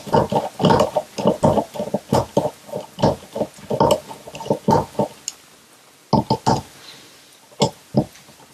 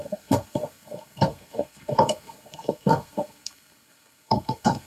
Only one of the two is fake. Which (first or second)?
second